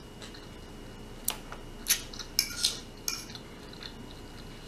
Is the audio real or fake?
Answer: real